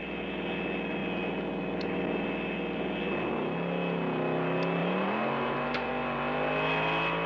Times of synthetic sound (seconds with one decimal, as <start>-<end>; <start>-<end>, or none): 4.8-5.9